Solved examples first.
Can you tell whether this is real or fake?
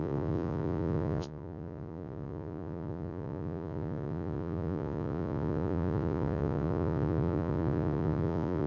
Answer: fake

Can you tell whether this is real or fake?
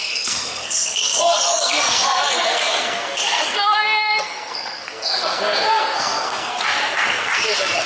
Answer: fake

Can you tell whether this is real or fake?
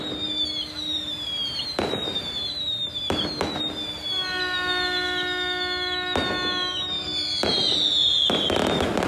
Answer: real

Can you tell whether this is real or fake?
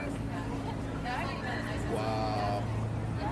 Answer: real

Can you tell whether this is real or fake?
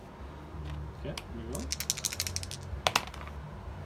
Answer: real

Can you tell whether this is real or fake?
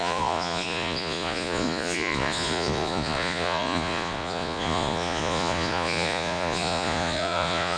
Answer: fake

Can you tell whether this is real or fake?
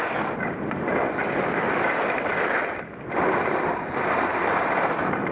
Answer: real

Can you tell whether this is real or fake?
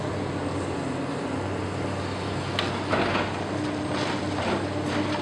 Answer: real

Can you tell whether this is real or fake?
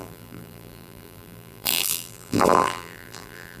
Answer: fake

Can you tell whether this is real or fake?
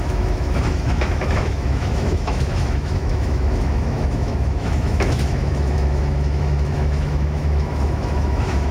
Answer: fake